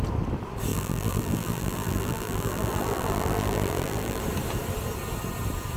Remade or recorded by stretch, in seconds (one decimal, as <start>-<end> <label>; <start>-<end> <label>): 0.0-0.7 recorded; 0.7-4.2 remade; 4.2-5.8 recorded